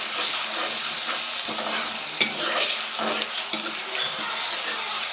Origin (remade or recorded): recorded